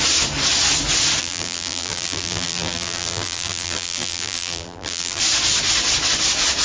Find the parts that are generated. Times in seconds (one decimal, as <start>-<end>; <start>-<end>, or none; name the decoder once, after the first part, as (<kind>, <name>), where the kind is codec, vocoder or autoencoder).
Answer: 1.2-5.2 (vocoder, BigVGAN v2)